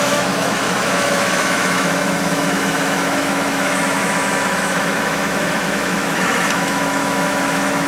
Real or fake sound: fake